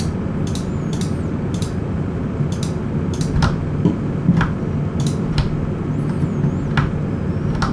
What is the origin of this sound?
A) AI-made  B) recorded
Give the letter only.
B